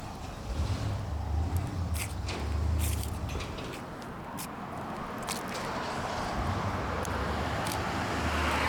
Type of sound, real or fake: real